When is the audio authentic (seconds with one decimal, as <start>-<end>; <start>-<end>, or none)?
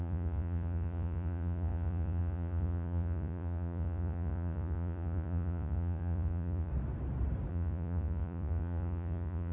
6.7-7.5